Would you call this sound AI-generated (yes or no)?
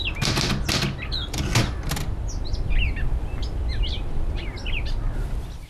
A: no